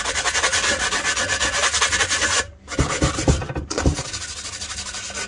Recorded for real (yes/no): yes